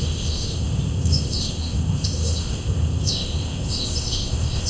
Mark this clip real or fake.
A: fake